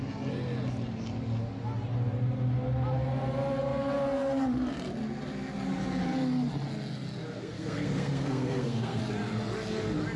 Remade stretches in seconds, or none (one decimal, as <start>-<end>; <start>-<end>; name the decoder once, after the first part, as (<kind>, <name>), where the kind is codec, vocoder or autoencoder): 7.3-9.0 (codec, SNAC)